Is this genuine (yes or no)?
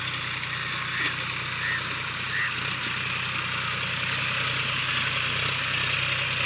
yes